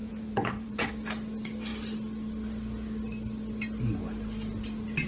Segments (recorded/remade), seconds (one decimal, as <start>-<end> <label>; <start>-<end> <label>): 0.0-0.9 remade; 0.9-5.1 recorded